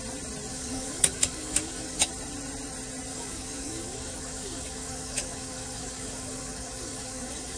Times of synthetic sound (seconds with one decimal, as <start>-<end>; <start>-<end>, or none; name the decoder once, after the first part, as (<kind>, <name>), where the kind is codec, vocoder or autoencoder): 0.5-2.1 (codec, DAC); 3.1-7.6